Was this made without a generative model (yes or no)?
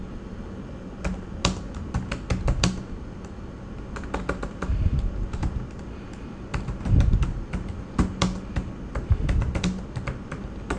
yes